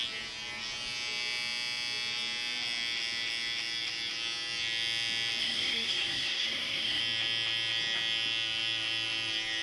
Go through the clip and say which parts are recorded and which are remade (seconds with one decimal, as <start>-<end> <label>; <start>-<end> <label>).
0.0-5.4 recorded; 5.4-7.0 remade; 7.0-9.6 recorded